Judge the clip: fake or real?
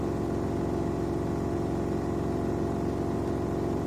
real